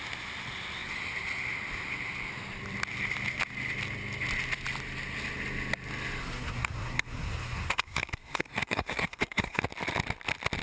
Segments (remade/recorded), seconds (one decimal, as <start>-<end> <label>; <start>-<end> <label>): 0.0-6.2 recorded; 6.2-9.6 remade; 9.6-10.6 recorded